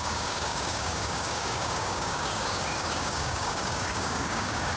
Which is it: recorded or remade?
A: remade